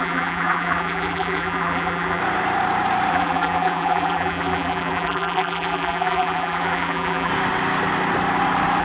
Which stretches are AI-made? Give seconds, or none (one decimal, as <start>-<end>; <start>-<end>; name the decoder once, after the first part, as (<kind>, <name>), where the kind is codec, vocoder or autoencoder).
0.0-2.2 (vocoder, BigVGAN v2); 3.1-7.3